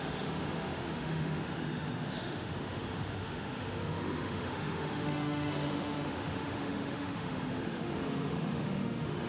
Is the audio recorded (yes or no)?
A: no